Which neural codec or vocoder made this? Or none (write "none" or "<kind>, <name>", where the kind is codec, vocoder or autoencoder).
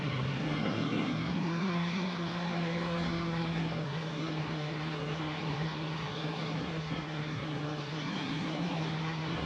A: codec, SNAC